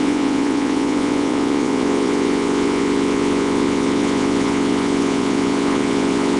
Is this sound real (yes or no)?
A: no